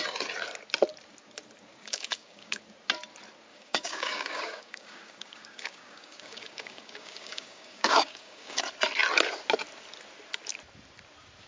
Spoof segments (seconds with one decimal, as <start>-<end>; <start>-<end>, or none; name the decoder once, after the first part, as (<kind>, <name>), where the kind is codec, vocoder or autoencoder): 1.7-2.6 (codec, DAC); 3.5-8.6